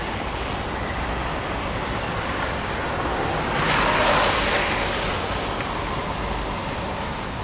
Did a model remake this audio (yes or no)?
no